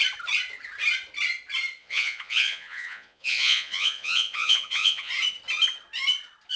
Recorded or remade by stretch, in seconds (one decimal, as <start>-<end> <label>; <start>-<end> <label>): 0.0-1.8 recorded; 1.8-5.1 remade; 5.1-6.6 recorded